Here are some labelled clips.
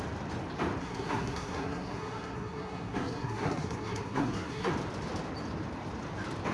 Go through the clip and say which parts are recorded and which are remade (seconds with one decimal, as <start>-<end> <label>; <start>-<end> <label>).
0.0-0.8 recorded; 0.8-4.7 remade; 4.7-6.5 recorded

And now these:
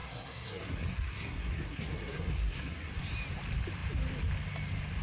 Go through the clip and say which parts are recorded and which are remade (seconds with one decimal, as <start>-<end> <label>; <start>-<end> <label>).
0.0-3.0 remade; 3.0-5.0 recorded

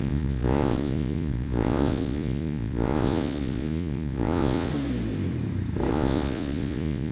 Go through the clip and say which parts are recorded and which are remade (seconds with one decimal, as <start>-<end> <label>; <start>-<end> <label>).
0.0-4.7 remade; 4.7-5.9 recorded; 5.9-7.1 remade